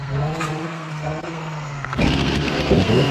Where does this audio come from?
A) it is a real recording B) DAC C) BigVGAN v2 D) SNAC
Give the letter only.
D